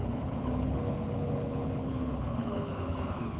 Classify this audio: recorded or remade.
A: remade